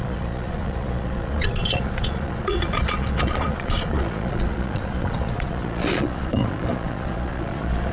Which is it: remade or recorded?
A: remade